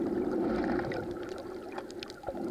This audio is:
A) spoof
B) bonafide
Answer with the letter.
B